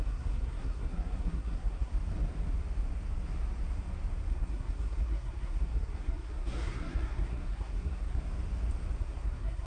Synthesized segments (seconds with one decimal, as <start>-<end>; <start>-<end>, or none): 0.0-1.9; 4.3-8.2; 9.0-9.7